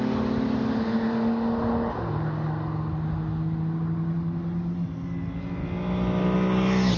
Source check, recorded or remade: recorded